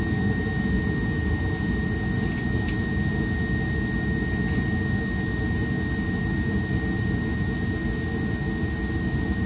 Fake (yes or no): no